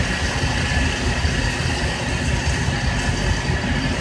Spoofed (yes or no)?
no